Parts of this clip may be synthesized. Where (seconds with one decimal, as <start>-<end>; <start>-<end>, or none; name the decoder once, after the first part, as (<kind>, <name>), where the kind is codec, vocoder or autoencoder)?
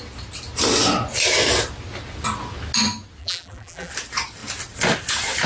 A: 3.2-3.9 (vocoder, BigVGAN v2)